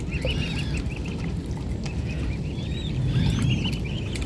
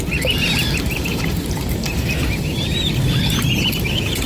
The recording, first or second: first